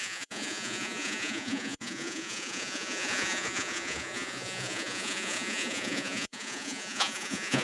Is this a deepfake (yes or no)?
yes